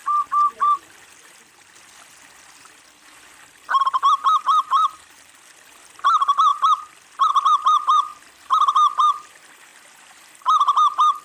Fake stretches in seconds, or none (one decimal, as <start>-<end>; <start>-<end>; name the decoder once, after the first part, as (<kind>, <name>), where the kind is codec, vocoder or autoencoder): 2.4-6.5 (vocoder, BigVGAN v2); 7.3-8.1; 8.7-11.2